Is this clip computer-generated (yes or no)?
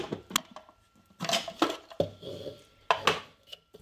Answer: no